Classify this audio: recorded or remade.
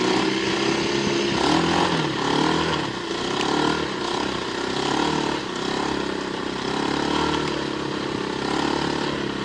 recorded